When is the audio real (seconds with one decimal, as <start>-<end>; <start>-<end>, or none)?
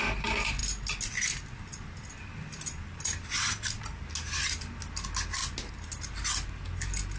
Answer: 0.0-7.2